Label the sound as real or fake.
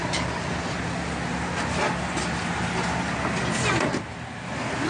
real